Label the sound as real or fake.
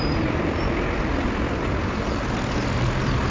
fake